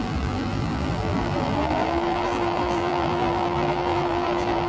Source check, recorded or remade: remade